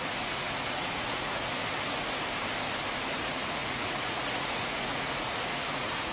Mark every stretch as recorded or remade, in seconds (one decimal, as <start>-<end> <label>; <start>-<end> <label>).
0.0-1.6 remade; 1.6-3.2 recorded; 3.2-6.1 remade